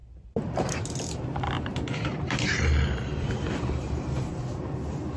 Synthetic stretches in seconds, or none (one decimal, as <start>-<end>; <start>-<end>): 0.0-0.7; 1.7-4.8